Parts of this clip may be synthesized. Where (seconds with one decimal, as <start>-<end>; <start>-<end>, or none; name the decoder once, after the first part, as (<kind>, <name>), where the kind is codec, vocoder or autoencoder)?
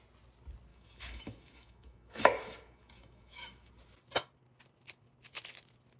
0.7-3.7 (autoencoder, DAC-VAE)